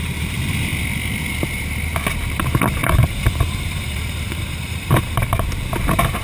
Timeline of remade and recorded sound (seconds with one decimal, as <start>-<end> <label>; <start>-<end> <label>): 0.0-2.8 recorded; 2.8-5.5 remade; 5.5-6.2 recorded

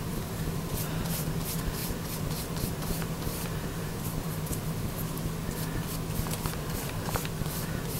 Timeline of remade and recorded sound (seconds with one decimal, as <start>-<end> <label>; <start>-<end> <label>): 0.0-4.6 remade; 4.6-6.5 recorded; 6.5-8.0 remade

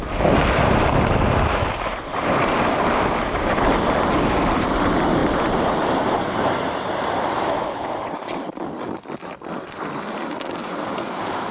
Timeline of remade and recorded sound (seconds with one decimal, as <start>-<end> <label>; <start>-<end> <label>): 0.0-2.1 recorded; 2.1-3.6 remade; 3.6-5.2 recorded; 5.2-8.5 remade; 8.5-10.6 recorded; 10.6-11.5 remade

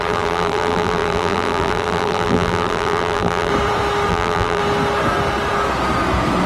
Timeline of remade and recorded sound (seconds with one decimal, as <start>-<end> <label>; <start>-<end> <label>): 0.0-3.5 remade; 3.5-4.1 recorded; 4.1-4.6 remade; 4.6-6.5 recorded